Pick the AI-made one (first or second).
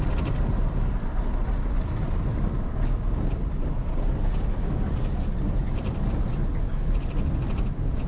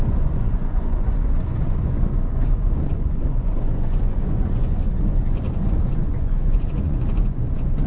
second